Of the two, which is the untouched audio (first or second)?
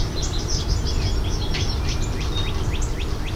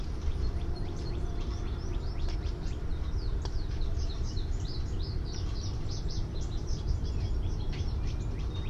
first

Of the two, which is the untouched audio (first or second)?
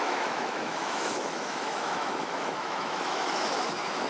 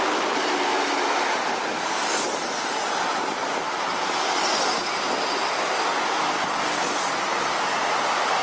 second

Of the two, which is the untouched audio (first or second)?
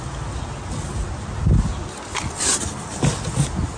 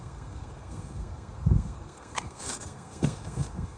first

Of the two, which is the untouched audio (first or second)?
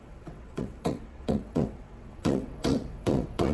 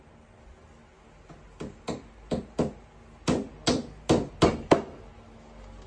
second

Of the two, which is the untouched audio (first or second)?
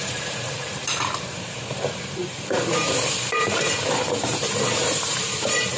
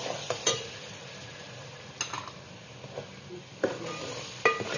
second